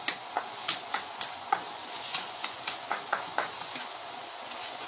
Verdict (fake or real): fake